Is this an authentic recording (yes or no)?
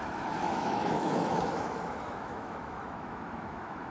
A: no